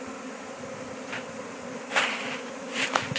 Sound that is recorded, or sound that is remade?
recorded